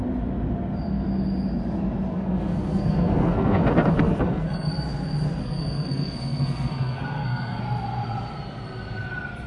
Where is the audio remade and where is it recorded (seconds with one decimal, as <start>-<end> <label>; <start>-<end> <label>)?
0.0-2.1 recorded; 2.1-4.7 remade; 4.7-5.4 recorded; 5.4-7.6 remade; 7.6-9.5 recorded